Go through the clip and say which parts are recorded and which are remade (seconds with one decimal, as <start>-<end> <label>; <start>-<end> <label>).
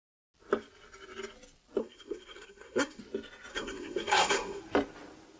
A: 0.0-1.8 recorded; 1.8-3.0 remade; 3.0-3.5 recorded; 3.5-4.6 remade; 4.6-5.4 recorded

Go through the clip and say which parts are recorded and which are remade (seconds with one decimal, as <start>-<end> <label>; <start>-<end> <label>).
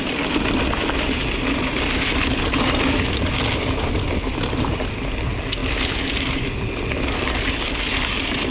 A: 0.0-8.5 recorded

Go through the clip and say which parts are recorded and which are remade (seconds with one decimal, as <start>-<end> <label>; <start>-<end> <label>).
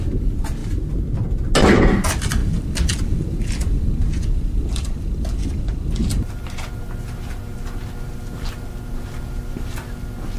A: 0.0-10.4 recorded